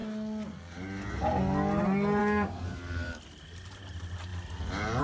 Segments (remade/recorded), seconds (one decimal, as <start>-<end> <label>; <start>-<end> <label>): 0.0-2.2 recorded; 2.2-3.2 remade; 3.2-5.0 recorded